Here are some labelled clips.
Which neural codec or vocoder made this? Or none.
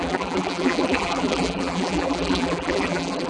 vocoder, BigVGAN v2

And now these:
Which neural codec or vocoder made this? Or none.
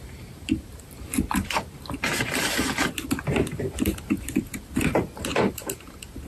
vocoder, BigVGAN v2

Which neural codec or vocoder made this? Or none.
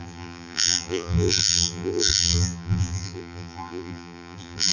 vocoder, BigVGAN v2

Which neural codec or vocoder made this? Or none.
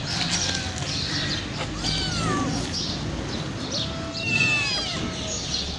none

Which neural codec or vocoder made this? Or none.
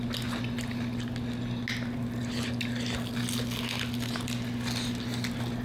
none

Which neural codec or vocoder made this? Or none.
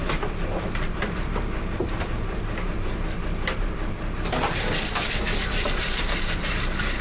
vocoder, BigVGAN v2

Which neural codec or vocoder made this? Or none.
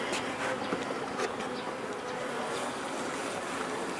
none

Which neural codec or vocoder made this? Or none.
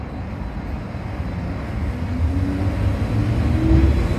none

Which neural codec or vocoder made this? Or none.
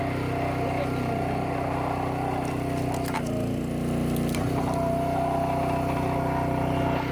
none